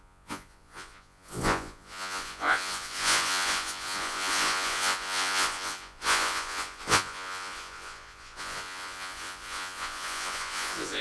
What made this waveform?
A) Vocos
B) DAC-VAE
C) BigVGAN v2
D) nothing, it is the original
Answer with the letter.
A